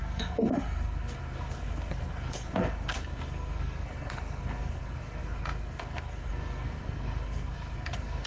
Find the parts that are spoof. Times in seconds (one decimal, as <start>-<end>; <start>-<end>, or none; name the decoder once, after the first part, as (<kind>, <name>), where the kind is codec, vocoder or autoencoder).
0.0-8.3 (codec, SNAC)